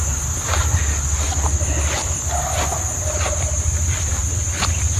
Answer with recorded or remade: recorded